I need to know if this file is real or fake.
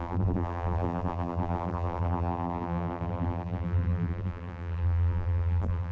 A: fake